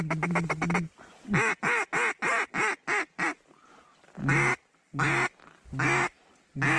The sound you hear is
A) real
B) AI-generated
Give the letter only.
A